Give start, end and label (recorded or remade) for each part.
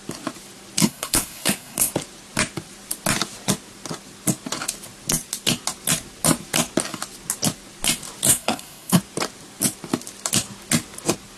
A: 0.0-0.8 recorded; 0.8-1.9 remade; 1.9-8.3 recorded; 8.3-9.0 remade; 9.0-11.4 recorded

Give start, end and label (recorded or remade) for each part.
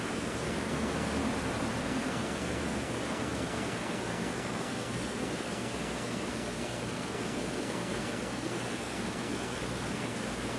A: 0.0-1.2 remade; 1.2-1.8 recorded; 1.8-10.6 remade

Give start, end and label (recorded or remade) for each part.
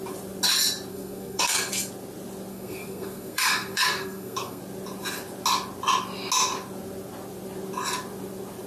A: 0.0-0.9 recorded; 0.9-1.7 remade; 1.7-2.5 recorded; 2.5-4.6 remade; 4.6-8.7 recorded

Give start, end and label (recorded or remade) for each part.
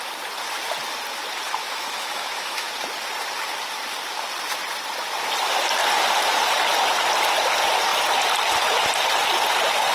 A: 0.0-1.6 recorded; 1.6-2.7 remade; 2.7-9.9 recorded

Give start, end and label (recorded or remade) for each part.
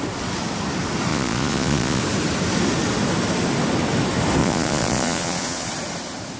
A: 0.0-1.1 recorded; 1.1-2.0 remade; 2.0-4.4 recorded; 4.4-5.7 remade; 5.7-6.4 recorded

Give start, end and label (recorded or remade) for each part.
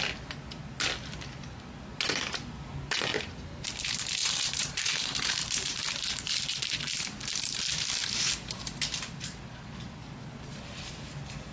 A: 0.0-4.2 recorded; 4.2-5.8 remade; 5.8-11.5 recorded